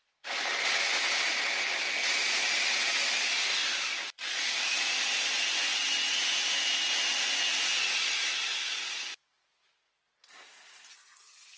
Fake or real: real